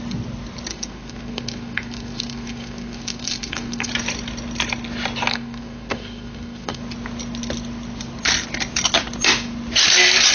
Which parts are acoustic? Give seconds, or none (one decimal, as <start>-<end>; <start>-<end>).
0.0-0.7; 3.9-5.3; 6.8-10.3